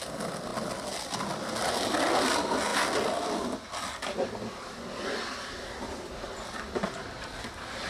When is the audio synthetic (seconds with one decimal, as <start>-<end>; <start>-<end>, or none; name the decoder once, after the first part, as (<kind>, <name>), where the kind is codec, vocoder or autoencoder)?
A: none